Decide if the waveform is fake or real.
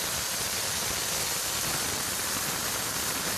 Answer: real